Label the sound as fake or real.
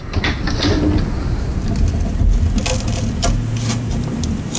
real